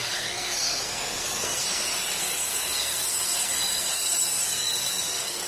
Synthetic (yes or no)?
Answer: yes